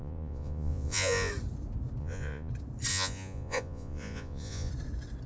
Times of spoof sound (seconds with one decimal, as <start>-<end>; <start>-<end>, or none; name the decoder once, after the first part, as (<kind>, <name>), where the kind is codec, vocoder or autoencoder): 0.0-1.3 (vocoder, Vocos); 2.0-2.5; 2.9-4.7